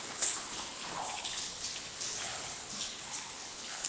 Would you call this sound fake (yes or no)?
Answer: yes